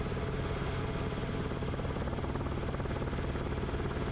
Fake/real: real